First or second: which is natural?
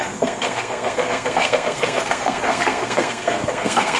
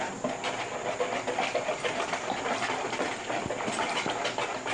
second